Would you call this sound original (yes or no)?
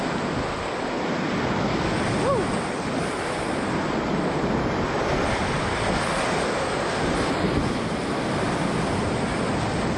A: yes